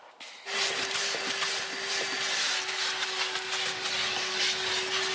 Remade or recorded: recorded